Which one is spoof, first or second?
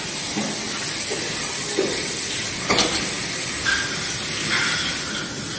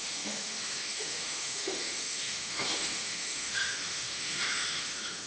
second